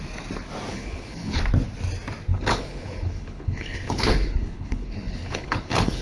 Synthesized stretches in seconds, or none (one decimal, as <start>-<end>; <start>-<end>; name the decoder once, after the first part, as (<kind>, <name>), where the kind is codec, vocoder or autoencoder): 0.7-1.4 (codec, HILCodec); 2.3-6.0